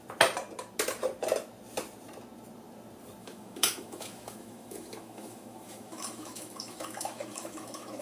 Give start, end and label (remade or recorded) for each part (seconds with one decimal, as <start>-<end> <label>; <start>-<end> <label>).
0.0-3.2 recorded; 3.2-8.0 remade